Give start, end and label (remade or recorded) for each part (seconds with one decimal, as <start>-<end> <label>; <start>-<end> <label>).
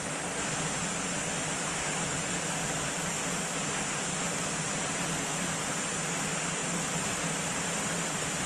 0.0-8.5 recorded